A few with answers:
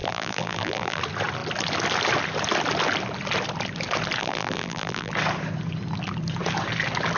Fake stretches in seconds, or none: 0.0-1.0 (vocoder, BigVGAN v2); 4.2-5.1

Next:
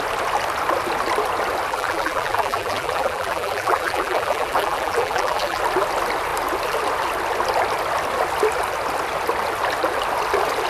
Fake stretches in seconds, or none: 1.7-5.6 (vocoder, BigVGAN v2)